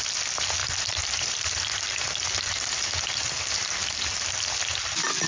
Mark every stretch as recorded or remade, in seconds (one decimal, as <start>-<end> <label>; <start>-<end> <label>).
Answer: 0.0-0.6 recorded; 0.6-3.8 remade; 3.8-5.3 recorded